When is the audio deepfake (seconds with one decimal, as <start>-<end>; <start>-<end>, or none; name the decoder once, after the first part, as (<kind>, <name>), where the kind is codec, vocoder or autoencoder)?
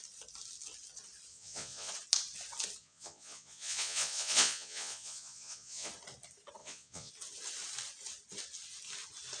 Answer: 1.3-1.9 (vocoder, Vocos); 2.8-5.9; 6.6-7.1